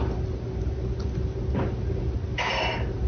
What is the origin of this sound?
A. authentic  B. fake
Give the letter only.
A